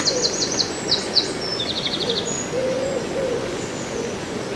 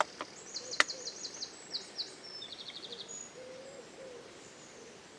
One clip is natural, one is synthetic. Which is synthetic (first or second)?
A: first